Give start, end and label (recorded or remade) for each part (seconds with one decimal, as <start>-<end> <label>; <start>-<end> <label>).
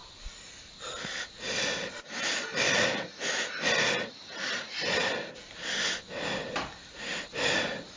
0.0-8.0 recorded